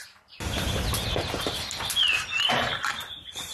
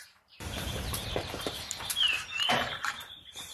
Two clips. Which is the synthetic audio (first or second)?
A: second